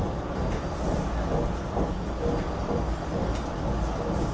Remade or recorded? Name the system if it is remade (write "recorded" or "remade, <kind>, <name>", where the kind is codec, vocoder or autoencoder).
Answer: recorded